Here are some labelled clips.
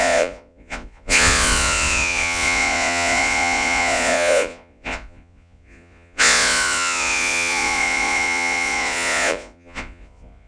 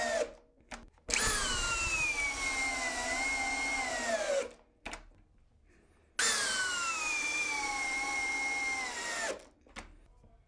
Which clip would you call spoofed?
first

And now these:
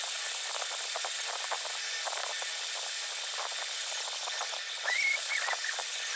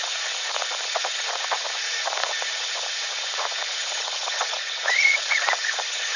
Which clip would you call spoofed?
second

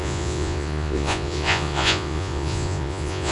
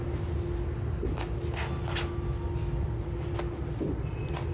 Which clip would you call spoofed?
first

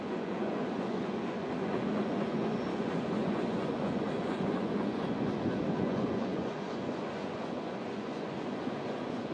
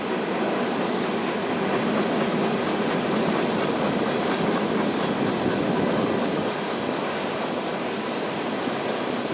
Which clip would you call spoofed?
first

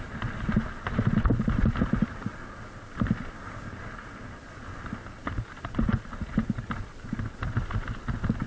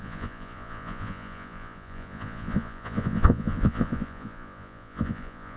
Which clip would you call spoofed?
second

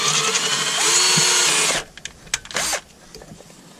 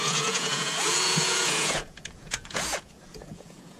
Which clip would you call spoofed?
second